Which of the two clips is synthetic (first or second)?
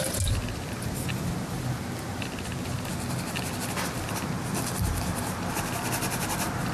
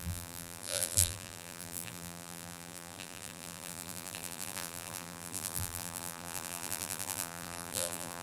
second